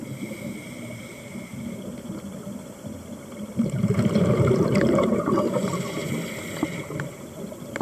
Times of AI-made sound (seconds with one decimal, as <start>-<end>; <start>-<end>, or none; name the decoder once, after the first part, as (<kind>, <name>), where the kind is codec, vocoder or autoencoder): 0.0-1.5 (vocoder, BigVGAN v2); 3.6-6.0

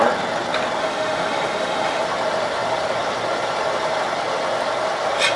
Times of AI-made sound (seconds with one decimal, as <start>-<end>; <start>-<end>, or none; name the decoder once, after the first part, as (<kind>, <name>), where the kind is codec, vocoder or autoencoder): 0.8-2.0 (autoencoder, DAC-VAE)